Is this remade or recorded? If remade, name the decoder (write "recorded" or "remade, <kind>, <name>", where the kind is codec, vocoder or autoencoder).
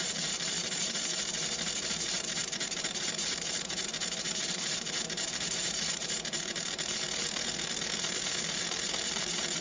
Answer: remade, vocoder, BigVGAN v2